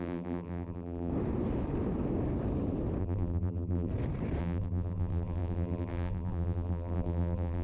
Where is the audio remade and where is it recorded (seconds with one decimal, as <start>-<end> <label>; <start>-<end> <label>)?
0.0-1.1 remade; 1.1-3.0 recorded; 3.0-3.9 remade; 3.9-4.4 recorded; 4.4-7.6 remade